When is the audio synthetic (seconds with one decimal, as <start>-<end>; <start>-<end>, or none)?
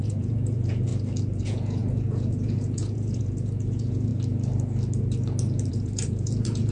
0.0-0.9; 1.4-4.1; 5.7-6.7